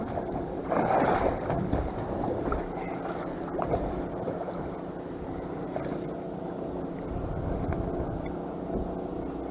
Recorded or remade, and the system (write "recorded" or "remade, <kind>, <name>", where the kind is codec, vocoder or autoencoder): recorded